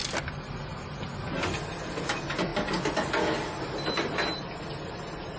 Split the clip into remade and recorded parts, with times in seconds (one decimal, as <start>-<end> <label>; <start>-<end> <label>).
0.0-5.4 recorded